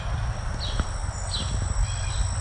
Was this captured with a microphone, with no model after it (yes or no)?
yes